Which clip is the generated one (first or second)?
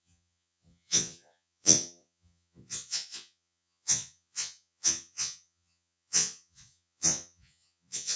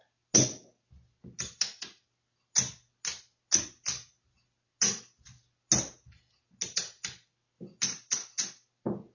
first